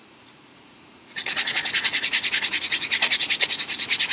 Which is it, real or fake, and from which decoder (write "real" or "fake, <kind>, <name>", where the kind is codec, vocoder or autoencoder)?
fake, vocoder, Vocos